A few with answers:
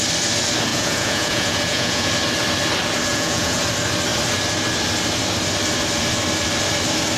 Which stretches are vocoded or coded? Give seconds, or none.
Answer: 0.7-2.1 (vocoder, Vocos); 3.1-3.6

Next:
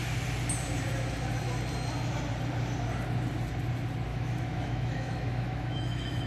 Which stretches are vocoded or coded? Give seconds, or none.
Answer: 4.1-6.3 (autoencoder, DAC-VAE)

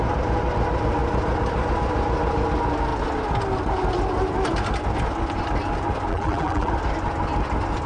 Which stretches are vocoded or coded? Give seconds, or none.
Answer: 6.1-6.7 (vocoder, BigVGAN v2)

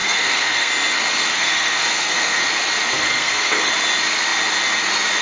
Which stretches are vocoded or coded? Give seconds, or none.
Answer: 0.0-0.7 (codec, SNAC); 1.3-2.4; 2.9-3.7

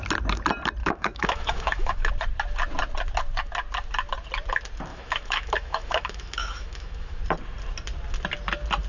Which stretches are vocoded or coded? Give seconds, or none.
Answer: 0.8-2.1 (autoencoder, DAC-VAE); 4.9-7.2

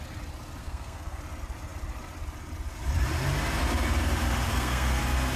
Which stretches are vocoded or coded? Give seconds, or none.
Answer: 0.6-1.2 (codec, SNAC); 4.5-5.0